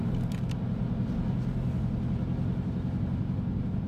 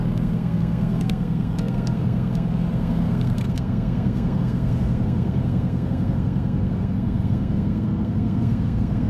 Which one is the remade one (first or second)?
second